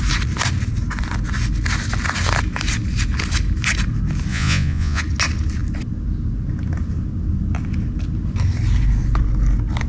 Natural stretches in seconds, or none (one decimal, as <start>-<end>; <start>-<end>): 0.0-4.3; 5.0-9.9